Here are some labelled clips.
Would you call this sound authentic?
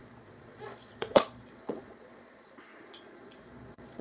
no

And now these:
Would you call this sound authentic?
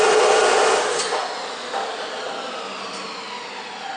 yes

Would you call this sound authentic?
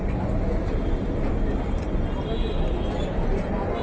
yes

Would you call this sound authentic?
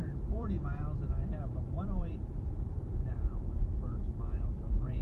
no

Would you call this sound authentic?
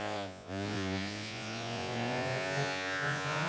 no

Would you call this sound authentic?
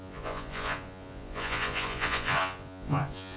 no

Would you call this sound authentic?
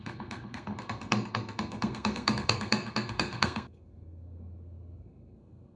no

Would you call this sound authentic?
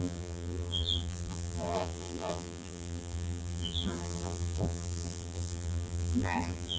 no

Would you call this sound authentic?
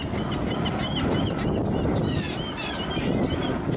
yes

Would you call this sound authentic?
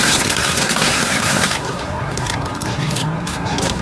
no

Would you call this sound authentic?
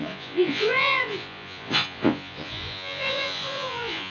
no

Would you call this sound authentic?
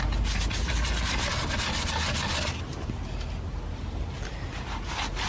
yes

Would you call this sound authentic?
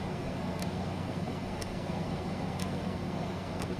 no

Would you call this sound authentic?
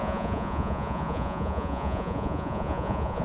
no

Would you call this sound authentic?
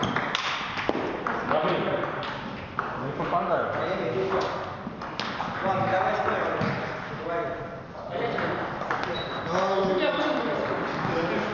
yes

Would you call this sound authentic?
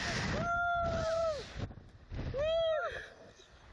yes